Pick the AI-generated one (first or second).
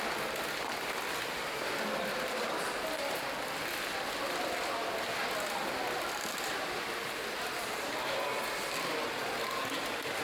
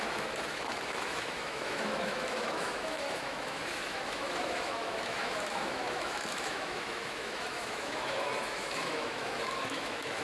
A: second